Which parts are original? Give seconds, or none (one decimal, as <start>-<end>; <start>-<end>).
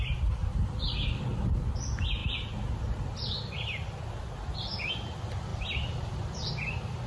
0.0-0.4; 1.6-5.5; 6.5-7.1